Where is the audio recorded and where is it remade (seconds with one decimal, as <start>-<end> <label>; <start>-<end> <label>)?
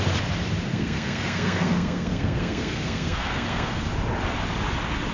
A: 0.0-0.7 recorded; 0.7-3.8 remade; 3.8-5.1 recorded